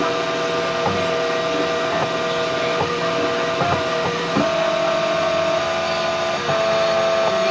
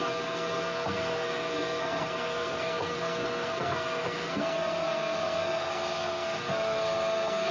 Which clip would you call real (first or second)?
first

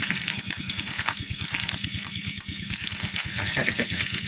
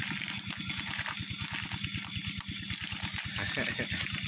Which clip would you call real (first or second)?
second